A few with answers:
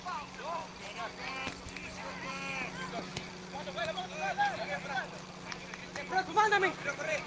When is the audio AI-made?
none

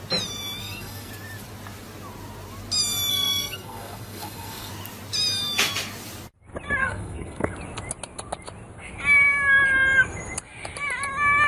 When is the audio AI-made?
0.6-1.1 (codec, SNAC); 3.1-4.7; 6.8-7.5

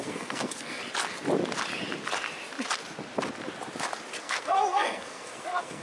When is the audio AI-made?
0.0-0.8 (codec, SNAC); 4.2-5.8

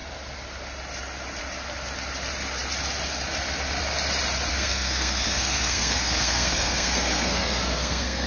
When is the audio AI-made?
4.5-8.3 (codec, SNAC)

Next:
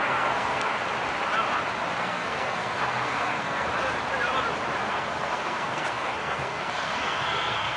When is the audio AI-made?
0.0-0.7 (codec, SNAC); 2.0-3.7; 4.9-7.8

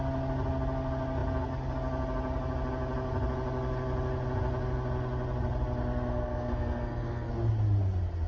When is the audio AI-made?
6.1-7.3 (codec, SNAC)

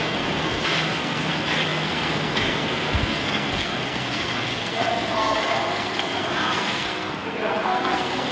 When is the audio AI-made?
0.0-8.3 (codec, SNAC)